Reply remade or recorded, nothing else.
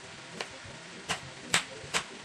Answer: recorded